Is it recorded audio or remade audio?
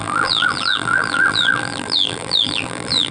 remade